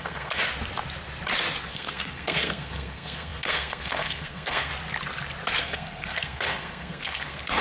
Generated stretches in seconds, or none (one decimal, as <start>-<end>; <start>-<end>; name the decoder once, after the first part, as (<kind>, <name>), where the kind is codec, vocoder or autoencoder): 0.0-0.4 (codec, SNAC); 1.7-4.7; 5.6-7.6